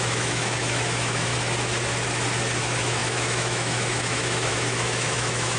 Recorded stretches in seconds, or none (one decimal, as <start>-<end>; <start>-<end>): 1.3-2.6